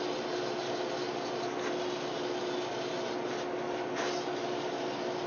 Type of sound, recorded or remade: recorded